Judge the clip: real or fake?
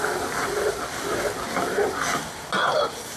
real